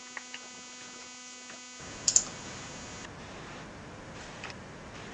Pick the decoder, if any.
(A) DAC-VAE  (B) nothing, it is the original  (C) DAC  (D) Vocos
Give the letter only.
B